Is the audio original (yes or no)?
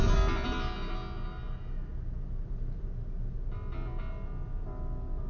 yes